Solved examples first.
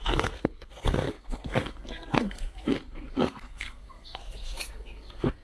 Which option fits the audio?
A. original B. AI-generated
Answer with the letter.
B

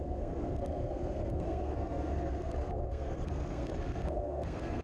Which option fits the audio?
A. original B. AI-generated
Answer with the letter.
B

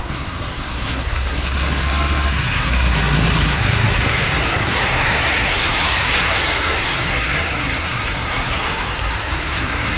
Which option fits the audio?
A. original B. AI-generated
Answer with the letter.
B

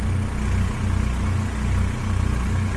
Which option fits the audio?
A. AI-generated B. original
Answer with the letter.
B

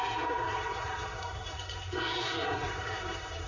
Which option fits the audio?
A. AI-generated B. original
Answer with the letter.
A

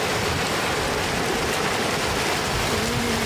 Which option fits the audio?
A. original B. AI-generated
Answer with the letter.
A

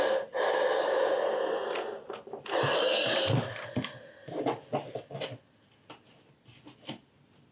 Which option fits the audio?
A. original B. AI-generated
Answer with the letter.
A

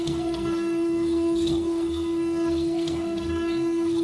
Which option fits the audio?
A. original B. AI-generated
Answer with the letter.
B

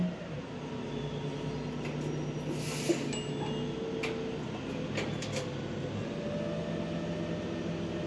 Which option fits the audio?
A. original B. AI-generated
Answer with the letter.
A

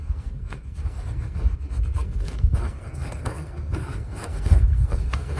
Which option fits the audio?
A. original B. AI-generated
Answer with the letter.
B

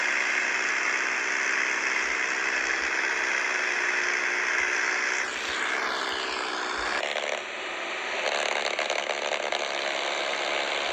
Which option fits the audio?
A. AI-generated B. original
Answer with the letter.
B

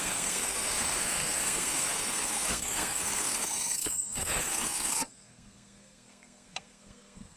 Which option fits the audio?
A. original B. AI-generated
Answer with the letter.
B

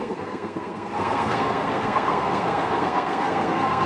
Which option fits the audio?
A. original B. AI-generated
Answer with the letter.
B